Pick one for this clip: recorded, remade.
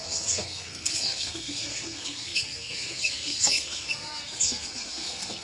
remade